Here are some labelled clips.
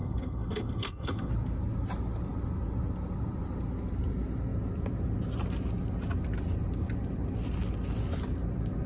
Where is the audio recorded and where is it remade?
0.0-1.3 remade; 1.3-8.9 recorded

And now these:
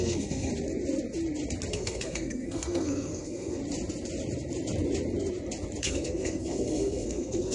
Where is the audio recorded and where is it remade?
0.0-0.5 remade; 0.5-1.7 recorded; 1.7-3.6 remade; 3.6-5.8 recorded; 5.8-7.5 remade

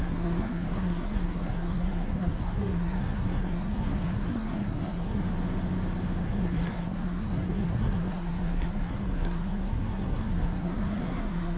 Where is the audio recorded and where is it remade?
0.0-5.2 remade; 5.2-6.2 recorded; 6.2-11.6 remade

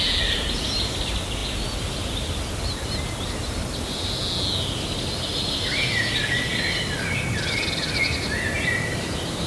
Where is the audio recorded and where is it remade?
0.0-9.5 recorded

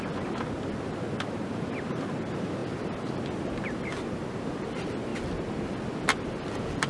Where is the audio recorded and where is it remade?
0.0-6.9 recorded

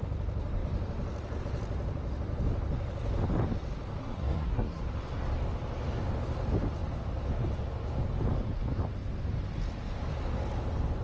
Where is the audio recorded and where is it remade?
0.0-4.0 recorded; 4.0-4.8 remade; 4.8-11.0 recorded

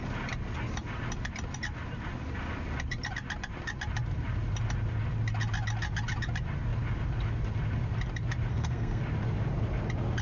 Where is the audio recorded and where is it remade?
0.0-8.5 recorded; 8.5-9.0 remade; 9.0-10.2 recorded

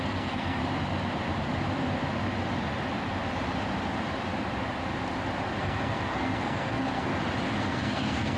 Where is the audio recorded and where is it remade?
0.0-0.6 remade; 0.6-5.6 recorded; 5.6-7.1 remade; 7.1-7.6 recorded; 7.6-8.4 remade